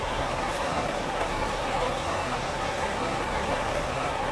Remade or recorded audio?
remade